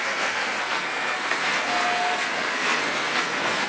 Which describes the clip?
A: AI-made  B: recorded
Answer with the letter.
A